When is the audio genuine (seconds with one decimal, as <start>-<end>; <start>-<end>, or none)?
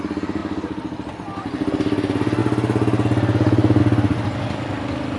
0.0-0.4; 1.1-5.2